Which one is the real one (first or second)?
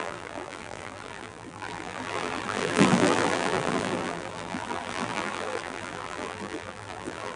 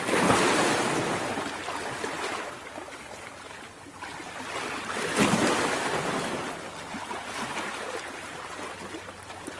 second